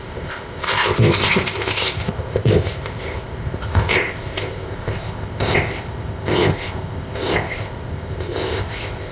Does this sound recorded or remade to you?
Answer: remade